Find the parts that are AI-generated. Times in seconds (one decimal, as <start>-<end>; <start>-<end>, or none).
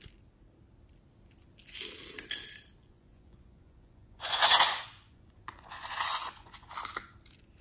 2.8-6.7